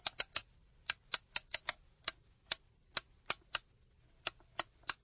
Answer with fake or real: real